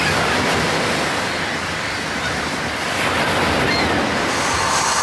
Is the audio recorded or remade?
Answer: recorded